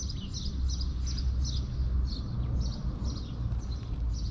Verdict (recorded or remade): recorded